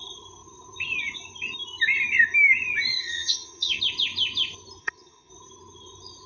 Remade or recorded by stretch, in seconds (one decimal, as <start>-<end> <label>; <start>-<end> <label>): 0.0-3.0 recorded; 3.0-3.8 remade; 3.8-4.8 recorded; 4.8-5.3 remade; 5.3-6.3 recorded